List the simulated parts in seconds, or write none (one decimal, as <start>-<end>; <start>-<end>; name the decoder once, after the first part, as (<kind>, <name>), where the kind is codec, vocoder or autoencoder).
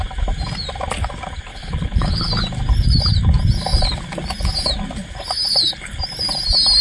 1.5-2.3 (codec, HILCodec)